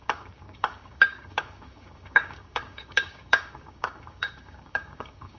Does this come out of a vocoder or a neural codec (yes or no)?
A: yes